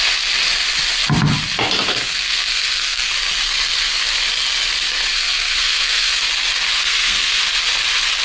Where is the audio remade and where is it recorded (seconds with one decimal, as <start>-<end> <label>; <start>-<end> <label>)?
0.0-1.9 recorded; 1.9-3.1 remade; 3.1-5.1 recorded; 5.1-6.2 remade; 6.2-6.8 recorded; 6.8-7.4 remade; 7.4-8.2 recorded